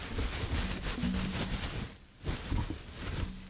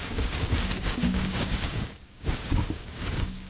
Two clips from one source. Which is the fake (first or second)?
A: second